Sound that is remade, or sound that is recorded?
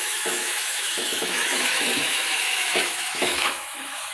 remade